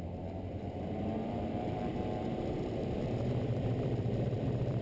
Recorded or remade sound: remade